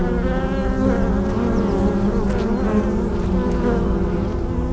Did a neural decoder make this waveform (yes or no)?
no